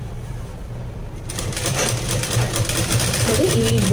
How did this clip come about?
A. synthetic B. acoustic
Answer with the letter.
A